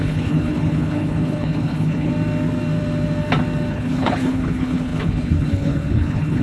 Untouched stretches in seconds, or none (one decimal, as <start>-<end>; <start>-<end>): 2.1-3.7